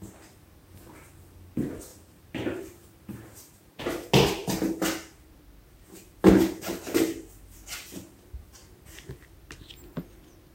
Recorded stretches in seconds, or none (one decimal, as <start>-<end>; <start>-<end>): 0.0-1.9; 3.8-10.5